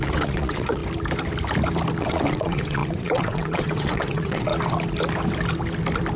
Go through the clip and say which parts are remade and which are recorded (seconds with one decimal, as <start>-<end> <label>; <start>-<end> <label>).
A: 0.0-0.8 remade; 0.8-2.0 recorded; 2.0-4.5 remade; 4.5-6.2 recorded